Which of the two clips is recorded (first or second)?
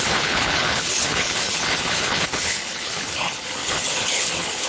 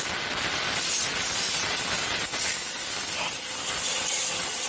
second